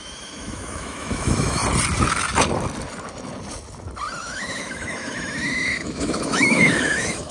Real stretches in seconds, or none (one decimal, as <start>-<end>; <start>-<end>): 1.6-4.2

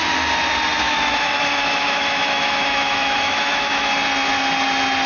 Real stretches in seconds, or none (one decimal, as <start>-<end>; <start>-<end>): 0.0-0.8; 3.9-5.1